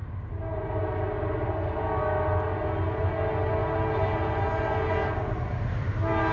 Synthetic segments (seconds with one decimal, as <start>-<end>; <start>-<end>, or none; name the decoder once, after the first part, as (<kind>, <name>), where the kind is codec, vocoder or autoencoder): none